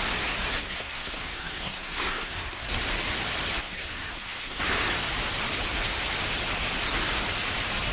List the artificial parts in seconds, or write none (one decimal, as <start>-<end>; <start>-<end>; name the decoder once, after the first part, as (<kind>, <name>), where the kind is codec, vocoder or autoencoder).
0.6-2.7 (codec, SNAC); 3.6-4.6